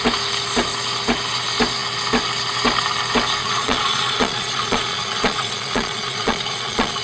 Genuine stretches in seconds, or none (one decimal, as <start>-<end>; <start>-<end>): 0.0-3.4